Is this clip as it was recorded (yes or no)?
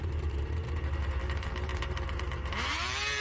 no